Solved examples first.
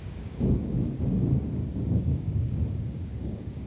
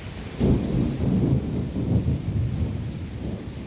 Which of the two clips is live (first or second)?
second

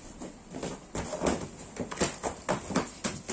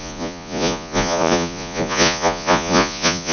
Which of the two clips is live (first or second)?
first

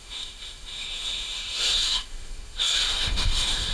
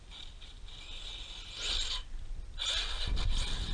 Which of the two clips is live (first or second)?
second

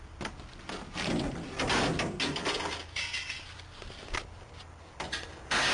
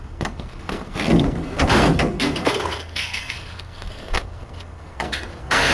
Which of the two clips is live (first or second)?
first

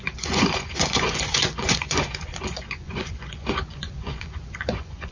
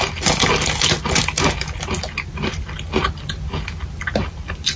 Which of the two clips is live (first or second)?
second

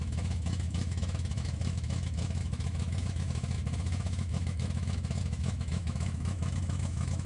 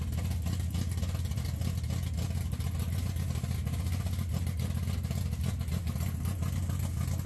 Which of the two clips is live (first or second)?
second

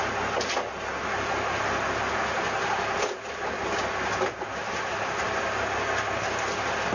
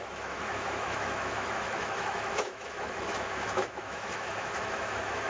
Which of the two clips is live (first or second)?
first